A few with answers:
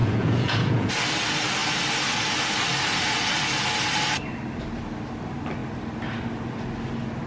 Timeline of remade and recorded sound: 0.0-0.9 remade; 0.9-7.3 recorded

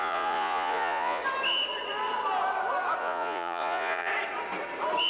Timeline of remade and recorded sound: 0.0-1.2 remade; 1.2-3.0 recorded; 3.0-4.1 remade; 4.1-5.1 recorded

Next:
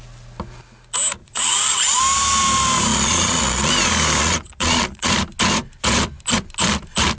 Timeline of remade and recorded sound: 0.0-1.2 recorded; 1.2-2.0 remade; 2.0-2.9 recorded; 2.9-3.7 remade; 3.7-4.2 recorded; 4.2-5.1 remade; 5.1-7.2 recorded

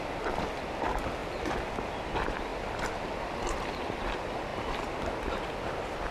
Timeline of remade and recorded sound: 0.0-6.1 recorded

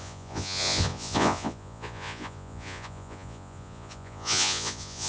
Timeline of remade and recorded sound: 0.0-5.1 remade

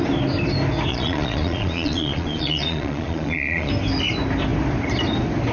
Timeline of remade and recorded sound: 0.0-0.9 recorded; 0.9-3.7 remade; 3.7-5.5 recorded

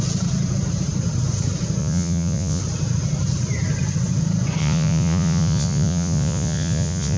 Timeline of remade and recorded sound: 0.0-1.8 recorded; 1.8-2.6 remade; 2.6-4.6 recorded; 4.6-7.2 remade

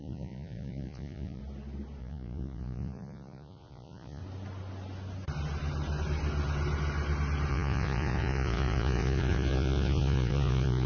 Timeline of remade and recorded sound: 0.0-1.4 remade; 1.4-2.0 recorded; 2.0-4.2 remade; 4.2-7.5 recorded; 7.5-10.9 remade